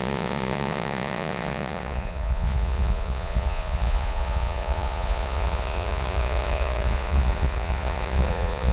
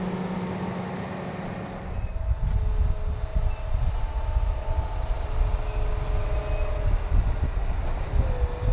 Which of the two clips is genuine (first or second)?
second